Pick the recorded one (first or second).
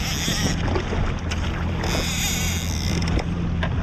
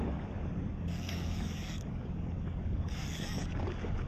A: first